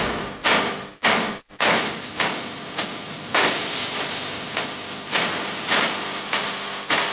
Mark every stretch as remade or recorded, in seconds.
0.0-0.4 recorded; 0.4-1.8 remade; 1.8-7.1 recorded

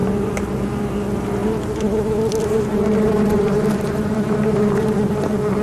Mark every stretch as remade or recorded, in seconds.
0.0-0.8 remade; 0.8-5.6 recorded

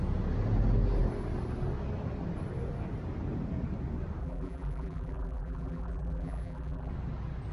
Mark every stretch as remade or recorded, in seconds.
0.0-4.2 recorded; 4.2-6.9 remade; 6.9-7.5 recorded

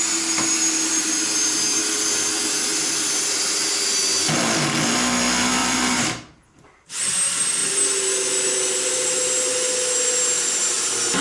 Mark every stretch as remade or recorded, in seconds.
0.0-5.6 recorded; 5.6-6.9 remade; 6.9-11.2 recorded